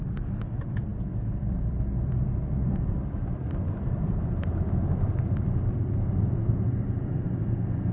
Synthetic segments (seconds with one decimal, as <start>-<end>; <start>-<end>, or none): 0.0-7.9